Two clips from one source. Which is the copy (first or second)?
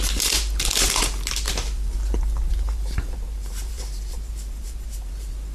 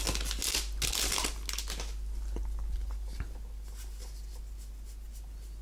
first